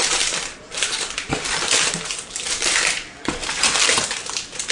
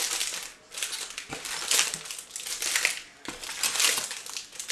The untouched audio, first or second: second